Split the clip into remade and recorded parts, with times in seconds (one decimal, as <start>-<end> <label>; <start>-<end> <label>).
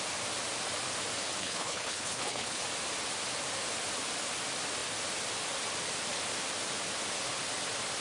0.0-1.4 recorded; 1.4-2.6 remade; 2.6-8.0 recorded